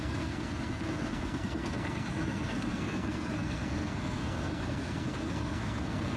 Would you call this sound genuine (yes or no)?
no